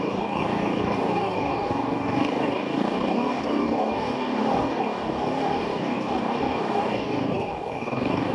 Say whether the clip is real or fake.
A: fake